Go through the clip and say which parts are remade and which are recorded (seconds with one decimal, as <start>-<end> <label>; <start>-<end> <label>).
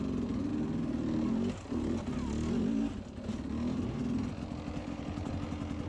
0.0-4.8 recorded; 4.8-5.3 remade; 5.3-5.9 recorded